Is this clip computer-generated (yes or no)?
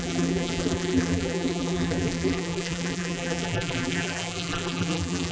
yes